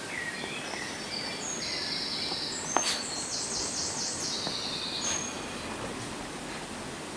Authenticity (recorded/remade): recorded